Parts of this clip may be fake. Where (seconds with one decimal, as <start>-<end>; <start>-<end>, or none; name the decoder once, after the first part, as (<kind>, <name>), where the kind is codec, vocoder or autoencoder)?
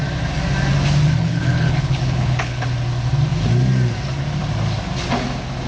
1.2-2.7 (codec, HILCodec)